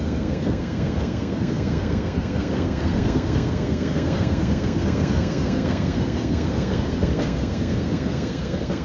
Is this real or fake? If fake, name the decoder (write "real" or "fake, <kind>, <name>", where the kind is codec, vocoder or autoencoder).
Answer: fake, codec, SNAC